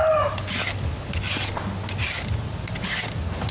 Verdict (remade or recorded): recorded